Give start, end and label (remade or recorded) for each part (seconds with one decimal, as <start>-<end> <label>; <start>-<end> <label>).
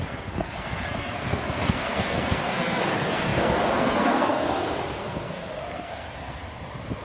0.0-6.4 remade; 6.4-7.0 recorded